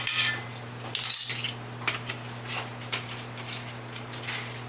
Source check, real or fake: real